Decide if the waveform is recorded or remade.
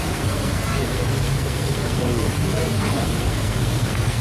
remade